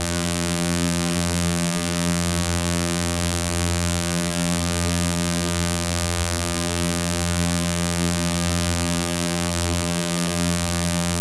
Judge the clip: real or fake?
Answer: fake